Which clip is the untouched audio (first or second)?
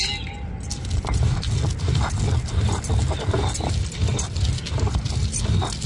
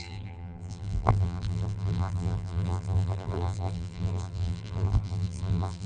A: first